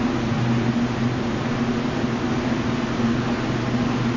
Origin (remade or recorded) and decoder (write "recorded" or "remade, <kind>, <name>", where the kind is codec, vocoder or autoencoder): recorded